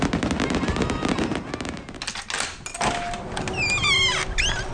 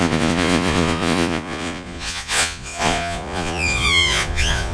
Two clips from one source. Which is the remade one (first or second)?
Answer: second